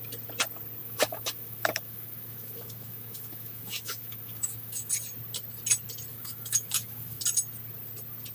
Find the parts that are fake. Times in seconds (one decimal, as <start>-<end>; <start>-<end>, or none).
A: 0.8-4.9; 6.1-7.2